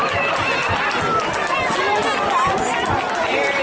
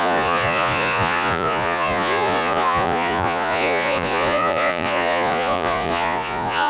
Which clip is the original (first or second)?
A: first